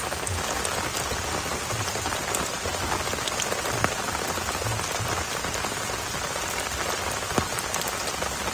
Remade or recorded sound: recorded